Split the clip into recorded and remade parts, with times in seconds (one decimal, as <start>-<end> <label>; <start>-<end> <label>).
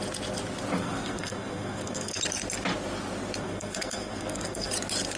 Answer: 0.0-0.8 recorded; 0.8-2.2 remade; 2.2-3.4 recorded; 3.4-4.7 remade; 4.7-5.2 recorded